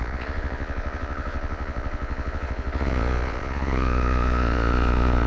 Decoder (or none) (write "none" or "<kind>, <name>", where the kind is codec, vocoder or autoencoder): vocoder, Vocos